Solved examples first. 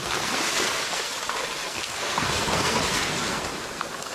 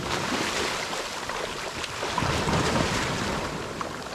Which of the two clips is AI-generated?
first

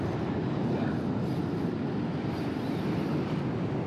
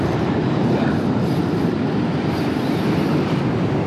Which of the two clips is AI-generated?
second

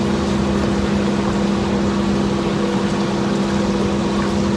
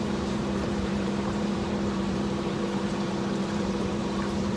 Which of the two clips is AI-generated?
second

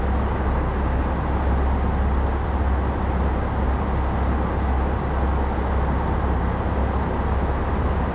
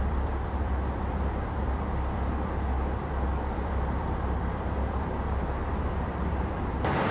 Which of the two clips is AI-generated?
second